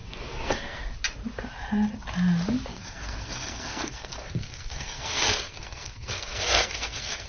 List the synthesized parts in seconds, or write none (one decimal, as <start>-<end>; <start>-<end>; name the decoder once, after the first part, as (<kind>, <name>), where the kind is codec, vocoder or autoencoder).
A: 0.0-0.8 (codec, SNAC); 2.7-7.3